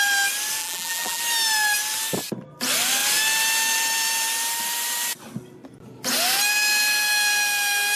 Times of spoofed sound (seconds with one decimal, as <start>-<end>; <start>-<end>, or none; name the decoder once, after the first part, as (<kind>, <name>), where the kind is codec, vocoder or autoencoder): 0.6-1.2 (vocoder, BigVGAN v2)